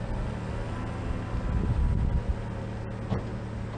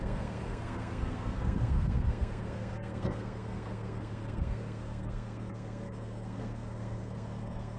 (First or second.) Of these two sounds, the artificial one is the second